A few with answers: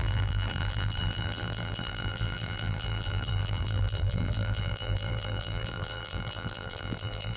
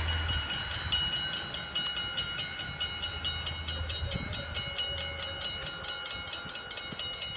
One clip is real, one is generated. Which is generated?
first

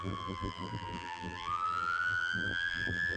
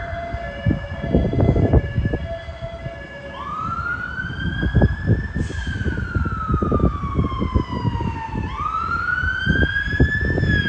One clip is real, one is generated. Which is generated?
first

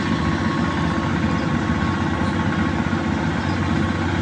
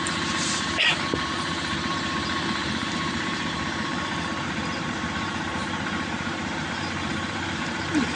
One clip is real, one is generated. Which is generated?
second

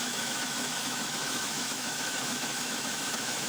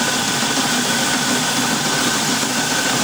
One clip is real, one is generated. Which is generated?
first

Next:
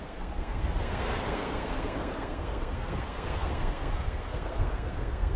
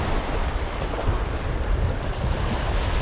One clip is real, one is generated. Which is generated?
first